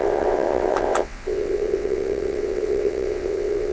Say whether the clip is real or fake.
fake